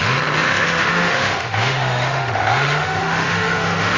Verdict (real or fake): fake